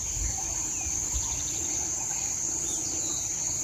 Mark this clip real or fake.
real